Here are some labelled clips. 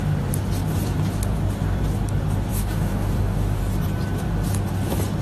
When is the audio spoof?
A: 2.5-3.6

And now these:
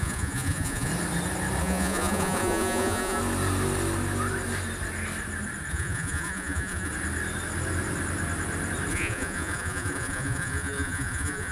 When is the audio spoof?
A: 0.0-0.9; 1.6-3.2; 5.7-6.9; 8.9-11.5

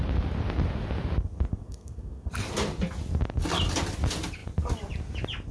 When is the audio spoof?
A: 1.6-2.3